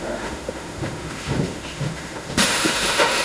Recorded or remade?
remade